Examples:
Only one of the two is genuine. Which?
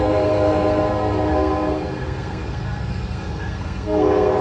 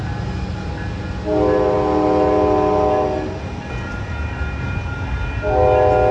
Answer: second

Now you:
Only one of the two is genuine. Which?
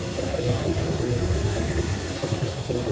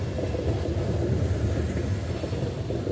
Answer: second